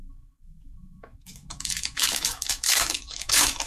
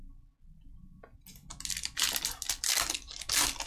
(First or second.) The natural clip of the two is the second